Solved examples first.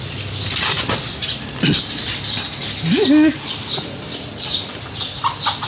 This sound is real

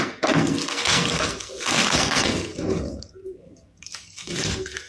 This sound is fake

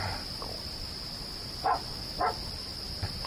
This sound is real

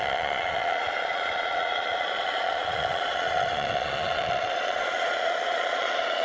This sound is fake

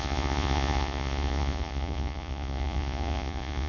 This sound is fake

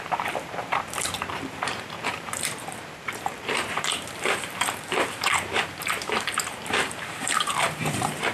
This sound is fake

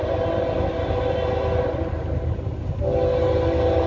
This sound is real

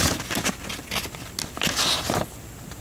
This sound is real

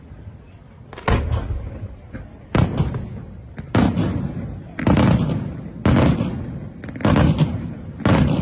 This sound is real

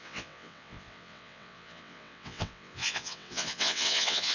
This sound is fake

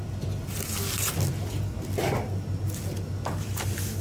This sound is real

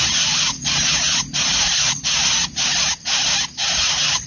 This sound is real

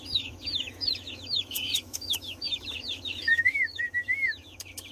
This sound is fake